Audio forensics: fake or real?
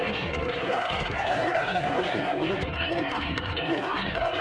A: fake